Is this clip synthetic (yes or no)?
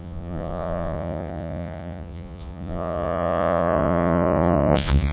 yes